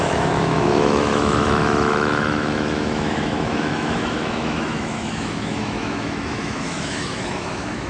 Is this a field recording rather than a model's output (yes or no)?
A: no